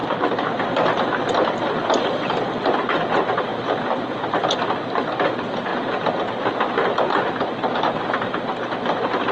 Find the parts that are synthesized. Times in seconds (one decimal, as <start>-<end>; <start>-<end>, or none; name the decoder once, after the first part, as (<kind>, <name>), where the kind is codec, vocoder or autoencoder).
1.7-3.5 (vocoder, BigVGAN v2); 5.0-9.3